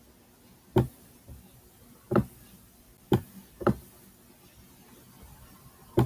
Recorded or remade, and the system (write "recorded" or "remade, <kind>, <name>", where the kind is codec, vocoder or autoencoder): recorded